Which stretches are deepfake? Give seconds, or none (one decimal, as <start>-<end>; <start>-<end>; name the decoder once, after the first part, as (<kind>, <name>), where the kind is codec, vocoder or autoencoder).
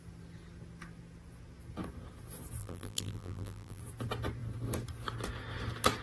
2.6-3.8 (vocoder, BigVGAN v2)